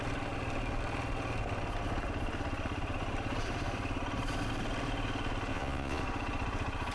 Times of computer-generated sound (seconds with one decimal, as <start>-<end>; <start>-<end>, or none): 5.5-6.0